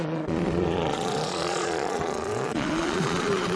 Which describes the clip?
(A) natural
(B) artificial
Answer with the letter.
B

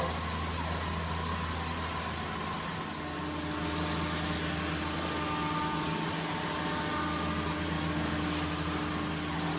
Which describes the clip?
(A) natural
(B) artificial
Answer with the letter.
A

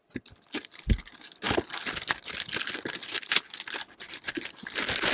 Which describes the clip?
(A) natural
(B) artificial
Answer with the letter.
A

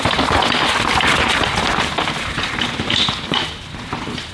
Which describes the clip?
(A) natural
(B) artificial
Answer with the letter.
A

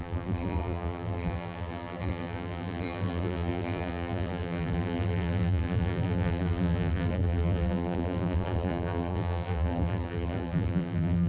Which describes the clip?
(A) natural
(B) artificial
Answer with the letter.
B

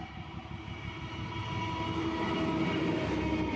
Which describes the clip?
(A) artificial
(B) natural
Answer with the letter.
B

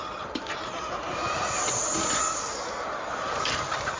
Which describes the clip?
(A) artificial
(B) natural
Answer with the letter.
B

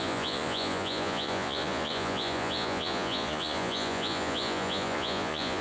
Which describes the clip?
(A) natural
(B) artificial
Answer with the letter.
B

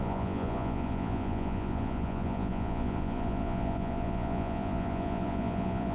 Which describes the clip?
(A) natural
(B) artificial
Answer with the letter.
B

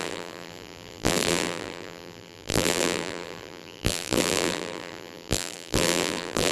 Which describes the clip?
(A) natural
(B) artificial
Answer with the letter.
B